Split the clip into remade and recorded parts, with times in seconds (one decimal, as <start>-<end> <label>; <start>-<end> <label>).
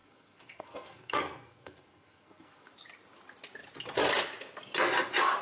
0.0-2.7 remade; 2.7-5.4 recorded